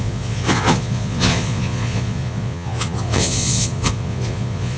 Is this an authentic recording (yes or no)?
no